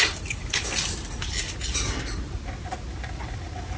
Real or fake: real